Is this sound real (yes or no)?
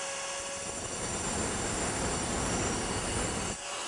yes